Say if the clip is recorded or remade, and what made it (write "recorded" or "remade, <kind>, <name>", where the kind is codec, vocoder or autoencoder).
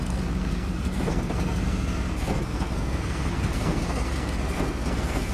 remade, codec, SNAC